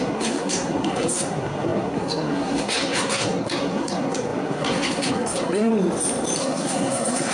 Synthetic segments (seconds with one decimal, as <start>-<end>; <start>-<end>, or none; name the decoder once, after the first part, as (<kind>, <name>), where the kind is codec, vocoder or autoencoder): 0.0-5.7 (codec, SNAC); 6.4-7.3

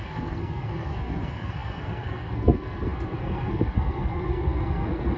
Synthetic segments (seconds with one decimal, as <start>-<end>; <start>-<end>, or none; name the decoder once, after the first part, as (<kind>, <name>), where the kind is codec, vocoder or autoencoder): 0.0-5.2 (codec, SNAC)

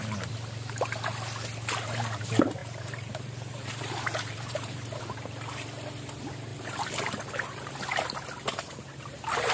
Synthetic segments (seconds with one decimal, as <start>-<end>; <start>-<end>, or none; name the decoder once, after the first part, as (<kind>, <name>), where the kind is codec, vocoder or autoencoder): 2.6-5.0 (vocoder, BigVGAN v2); 6.5-7.2

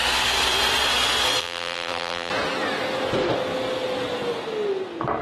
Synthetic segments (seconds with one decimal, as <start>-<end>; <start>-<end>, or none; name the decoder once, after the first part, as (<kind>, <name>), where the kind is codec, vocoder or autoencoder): 1.4-2.3 (vocoder, BigVGAN v2)

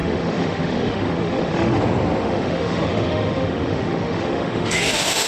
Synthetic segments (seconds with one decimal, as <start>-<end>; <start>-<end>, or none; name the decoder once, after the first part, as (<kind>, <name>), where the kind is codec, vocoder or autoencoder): 0.0-1.8 (autoencoder, DAC-VAE); 2.2-5.3

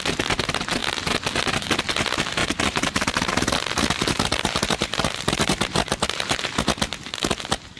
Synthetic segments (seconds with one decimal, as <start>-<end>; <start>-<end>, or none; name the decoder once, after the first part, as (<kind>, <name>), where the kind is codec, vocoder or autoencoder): 2.4-6.3 (vocoder, BigVGAN v2)

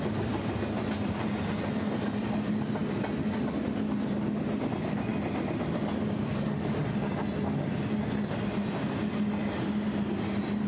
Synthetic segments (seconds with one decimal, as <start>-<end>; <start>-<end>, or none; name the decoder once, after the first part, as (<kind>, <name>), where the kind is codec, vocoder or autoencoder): none

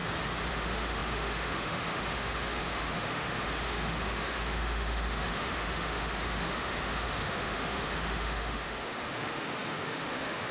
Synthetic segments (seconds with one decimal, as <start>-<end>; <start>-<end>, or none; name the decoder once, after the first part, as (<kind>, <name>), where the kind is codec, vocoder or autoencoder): 0.5-10.5 (autoencoder, DAC-VAE)